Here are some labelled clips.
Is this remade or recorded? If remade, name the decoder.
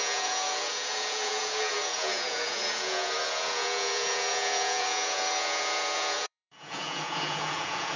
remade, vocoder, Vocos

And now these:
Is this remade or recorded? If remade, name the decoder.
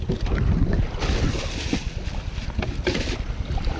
recorded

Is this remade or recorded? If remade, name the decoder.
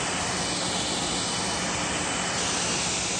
recorded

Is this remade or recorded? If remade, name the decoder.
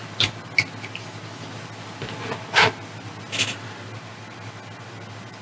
recorded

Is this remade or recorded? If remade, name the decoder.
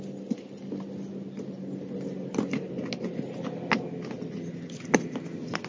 recorded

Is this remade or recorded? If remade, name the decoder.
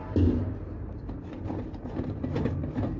recorded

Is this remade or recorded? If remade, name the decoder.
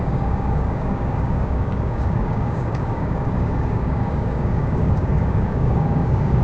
remade, codec, DAC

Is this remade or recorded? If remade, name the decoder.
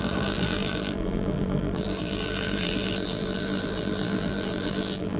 remade, vocoder, BigVGAN v2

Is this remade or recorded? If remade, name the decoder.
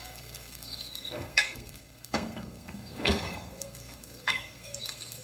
remade, codec, SNAC